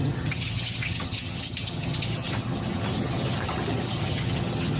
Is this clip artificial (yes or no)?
yes